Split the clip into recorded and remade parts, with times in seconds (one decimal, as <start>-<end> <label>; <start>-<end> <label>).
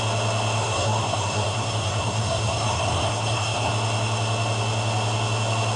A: 0.0-0.6 recorded; 0.6-3.7 remade; 3.7-5.8 recorded